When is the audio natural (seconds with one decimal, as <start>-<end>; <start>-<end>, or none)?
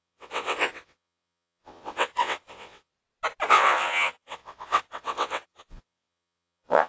2.9-3.5